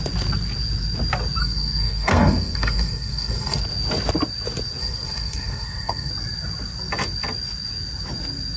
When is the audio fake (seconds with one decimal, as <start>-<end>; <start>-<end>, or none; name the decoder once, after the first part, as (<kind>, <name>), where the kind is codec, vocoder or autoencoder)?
1.4-3.6 (codec, SNAC); 4.8-6.1